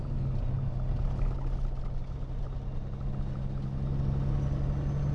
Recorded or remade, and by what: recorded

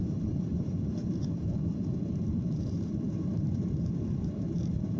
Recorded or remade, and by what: remade, vocoder, BigVGAN v2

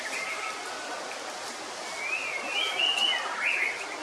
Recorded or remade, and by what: recorded